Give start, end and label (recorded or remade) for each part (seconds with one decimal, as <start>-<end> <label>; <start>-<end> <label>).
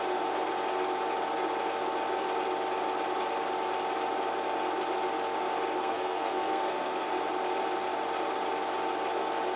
0.0-5.8 recorded; 5.8-7.1 remade; 7.1-9.6 recorded